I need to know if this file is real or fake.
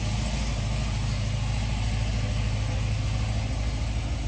real